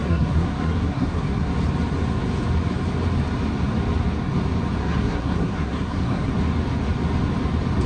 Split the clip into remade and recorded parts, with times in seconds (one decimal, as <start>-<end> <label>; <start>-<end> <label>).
0.0-1.5 remade; 1.5-4.8 recorded; 4.8-6.3 remade; 6.3-7.9 recorded